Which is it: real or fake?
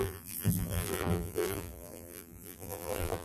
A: fake